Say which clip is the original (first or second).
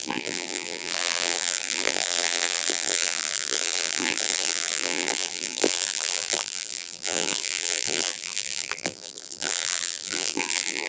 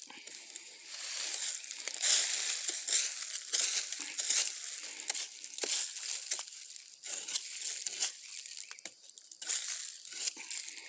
second